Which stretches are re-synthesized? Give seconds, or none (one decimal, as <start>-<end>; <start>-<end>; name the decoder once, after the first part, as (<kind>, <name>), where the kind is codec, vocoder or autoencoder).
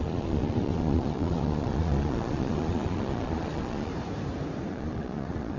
0.0-3.9 (vocoder, Vocos); 4.7-5.6